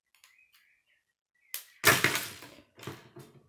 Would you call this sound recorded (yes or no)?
yes